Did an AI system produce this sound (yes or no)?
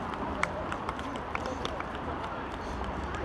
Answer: yes